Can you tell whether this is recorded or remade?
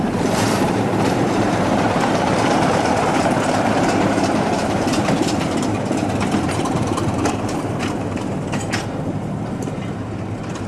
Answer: remade